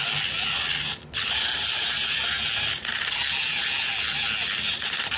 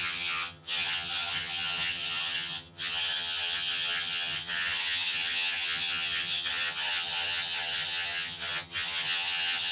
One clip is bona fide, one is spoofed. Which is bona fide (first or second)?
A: first